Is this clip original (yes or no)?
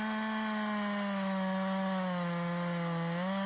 yes